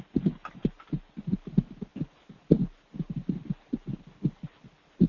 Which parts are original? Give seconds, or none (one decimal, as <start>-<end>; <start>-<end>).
0.0-5.1